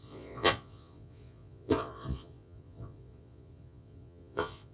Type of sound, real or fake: fake